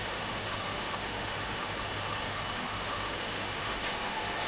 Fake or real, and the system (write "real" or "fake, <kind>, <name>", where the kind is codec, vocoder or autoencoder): fake, autoencoder, DAC-VAE